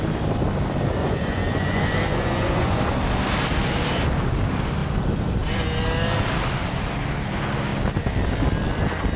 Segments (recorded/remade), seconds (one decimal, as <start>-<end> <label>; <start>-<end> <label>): 0.0-1.0 recorded; 1.0-2.8 remade; 2.8-9.2 recorded